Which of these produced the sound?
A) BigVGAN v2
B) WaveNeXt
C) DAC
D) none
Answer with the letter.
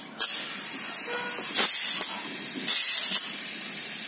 D